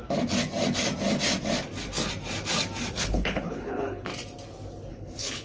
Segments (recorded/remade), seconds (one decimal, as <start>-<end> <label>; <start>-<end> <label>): 0.0-2.9 recorded; 2.9-4.1 remade; 4.1-4.9 recorded; 4.9-5.4 remade

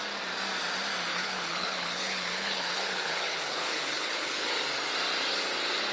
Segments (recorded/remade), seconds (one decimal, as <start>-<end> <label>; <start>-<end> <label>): 0.0-1.1 recorded; 1.1-4.6 remade; 4.6-5.9 recorded

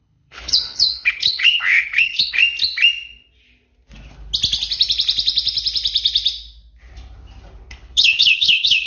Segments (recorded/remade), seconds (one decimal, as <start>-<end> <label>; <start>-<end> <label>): 0.0-2.4 remade; 2.4-7.7 recorded; 7.7-8.9 remade

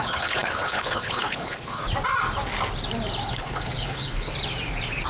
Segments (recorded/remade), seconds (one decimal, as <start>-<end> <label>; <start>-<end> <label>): 0.0-1.8 remade; 1.8-3.3 recorded; 3.3-4.3 remade; 4.3-5.1 recorded

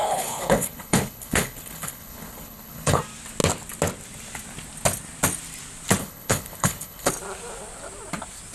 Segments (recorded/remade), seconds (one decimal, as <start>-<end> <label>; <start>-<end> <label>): 0.0-3.0 remade; 3.0-6.0 recorded; 6.0-7.1 remade; 7.1-8.5 recorded